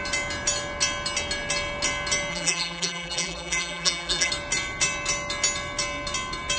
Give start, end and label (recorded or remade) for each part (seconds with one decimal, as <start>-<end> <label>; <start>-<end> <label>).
0.0-2.3 recorded; 2.3-4.3 remade; 4.3-6.6 recorded